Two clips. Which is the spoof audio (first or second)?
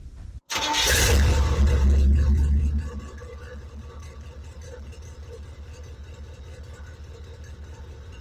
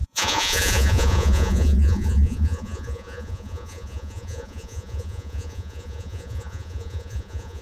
second